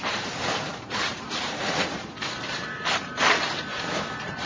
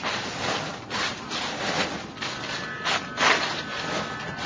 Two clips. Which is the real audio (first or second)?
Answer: second